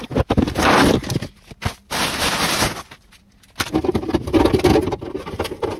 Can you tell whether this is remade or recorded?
recorded